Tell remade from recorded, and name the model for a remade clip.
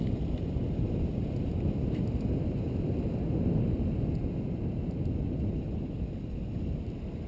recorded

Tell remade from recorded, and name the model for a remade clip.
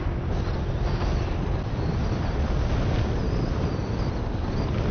recorded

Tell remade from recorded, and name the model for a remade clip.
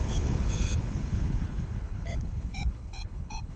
remade, codec, HILCodec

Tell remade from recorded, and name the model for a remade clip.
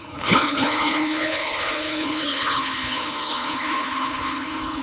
remade, codec, HILCodec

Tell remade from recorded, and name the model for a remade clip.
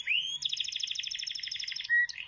recorded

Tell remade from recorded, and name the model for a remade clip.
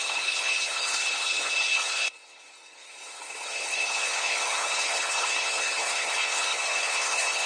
remade, codec, HILCodec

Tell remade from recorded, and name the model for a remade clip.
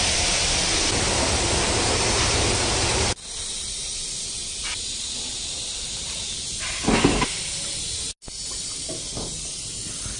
recorded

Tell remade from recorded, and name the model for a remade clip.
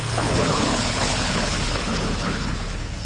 remade, codec, HILCodec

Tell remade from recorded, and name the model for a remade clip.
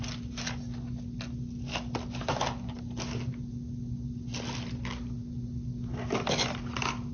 recorded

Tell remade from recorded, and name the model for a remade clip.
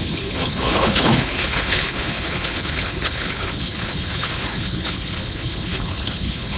remade, codec, HILCodec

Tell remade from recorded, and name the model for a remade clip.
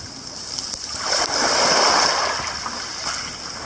recorded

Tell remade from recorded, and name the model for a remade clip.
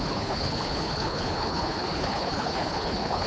remade, codec, HILCodec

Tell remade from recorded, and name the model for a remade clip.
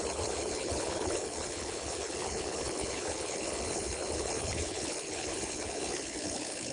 remade, codec, HILCodec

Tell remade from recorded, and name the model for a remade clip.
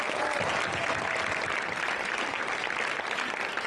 recorded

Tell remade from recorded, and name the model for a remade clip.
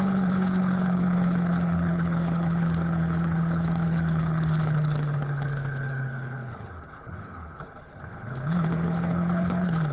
remade, codec, HILCodec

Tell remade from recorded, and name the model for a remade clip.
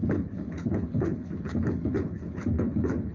remade, codec, HILCodec